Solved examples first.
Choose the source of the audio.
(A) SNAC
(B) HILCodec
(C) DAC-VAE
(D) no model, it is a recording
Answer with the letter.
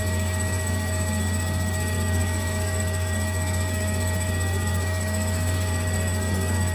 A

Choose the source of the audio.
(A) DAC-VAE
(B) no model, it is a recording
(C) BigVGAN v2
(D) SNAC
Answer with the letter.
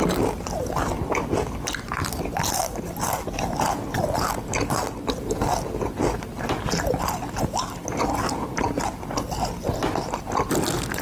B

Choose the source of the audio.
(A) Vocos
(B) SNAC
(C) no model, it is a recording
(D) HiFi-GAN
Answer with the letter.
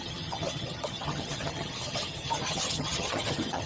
D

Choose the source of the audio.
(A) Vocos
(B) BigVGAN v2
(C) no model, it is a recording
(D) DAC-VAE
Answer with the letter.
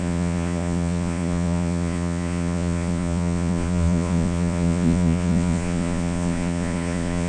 A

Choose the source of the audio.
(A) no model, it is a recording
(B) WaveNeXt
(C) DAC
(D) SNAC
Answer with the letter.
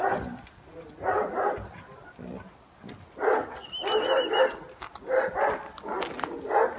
A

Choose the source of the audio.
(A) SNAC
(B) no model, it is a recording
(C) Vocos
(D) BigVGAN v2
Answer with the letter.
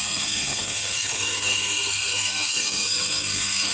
A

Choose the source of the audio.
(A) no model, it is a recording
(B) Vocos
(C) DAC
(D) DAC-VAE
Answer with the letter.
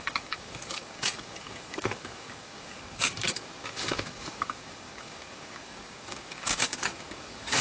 C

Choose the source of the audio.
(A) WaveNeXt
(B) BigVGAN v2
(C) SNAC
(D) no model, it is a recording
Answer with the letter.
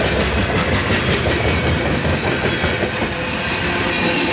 D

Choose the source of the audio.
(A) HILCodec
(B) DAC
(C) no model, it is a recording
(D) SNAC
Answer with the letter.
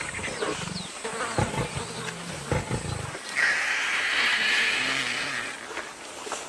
C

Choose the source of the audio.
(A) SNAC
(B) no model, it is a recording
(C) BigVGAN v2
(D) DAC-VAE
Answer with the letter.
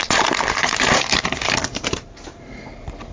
C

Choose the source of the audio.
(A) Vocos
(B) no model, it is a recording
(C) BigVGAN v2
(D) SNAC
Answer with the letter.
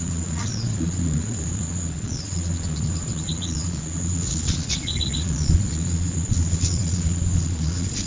A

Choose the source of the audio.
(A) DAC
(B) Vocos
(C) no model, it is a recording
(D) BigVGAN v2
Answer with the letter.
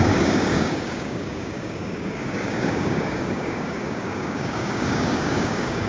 A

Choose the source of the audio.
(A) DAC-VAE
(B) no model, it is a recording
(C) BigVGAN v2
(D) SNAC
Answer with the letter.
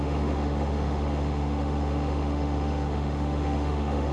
A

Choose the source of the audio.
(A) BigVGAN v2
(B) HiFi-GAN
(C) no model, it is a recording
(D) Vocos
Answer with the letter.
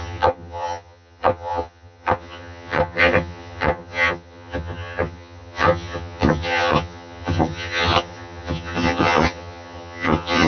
B